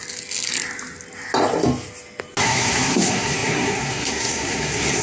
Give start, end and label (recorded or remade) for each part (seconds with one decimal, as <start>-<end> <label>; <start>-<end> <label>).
0.0-2.4 recorded; 2.4-5.0 remade